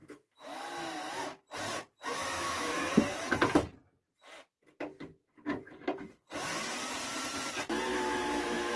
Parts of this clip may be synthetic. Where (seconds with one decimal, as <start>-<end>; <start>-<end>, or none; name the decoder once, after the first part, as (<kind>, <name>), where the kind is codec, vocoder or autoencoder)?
0.0-1.4 (autoencoder, DAC-VAE); 2.2-2.8; 7.9-8.8

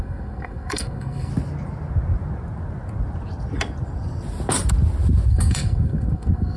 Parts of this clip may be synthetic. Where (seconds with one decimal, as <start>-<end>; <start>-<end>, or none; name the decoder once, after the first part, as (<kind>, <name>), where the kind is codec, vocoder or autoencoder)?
0.0-1.3 (codec, SNAC); 5.3-6.6

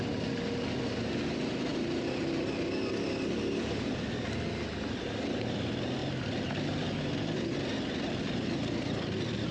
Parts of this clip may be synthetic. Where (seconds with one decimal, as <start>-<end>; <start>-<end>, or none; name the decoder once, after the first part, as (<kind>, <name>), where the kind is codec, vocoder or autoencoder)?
none

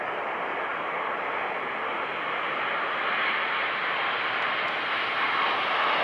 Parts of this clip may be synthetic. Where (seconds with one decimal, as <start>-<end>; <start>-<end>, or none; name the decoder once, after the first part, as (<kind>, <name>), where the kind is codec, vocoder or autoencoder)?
0.7-3.8 (vocoder, BigVGAN v2)